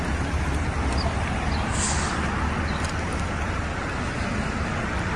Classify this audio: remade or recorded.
recorded